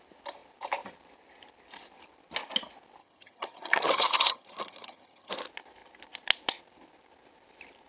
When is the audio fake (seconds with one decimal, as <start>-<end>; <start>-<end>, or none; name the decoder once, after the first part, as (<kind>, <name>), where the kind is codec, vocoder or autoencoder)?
3.0-5.3 (vocoder, HiFi-GAN)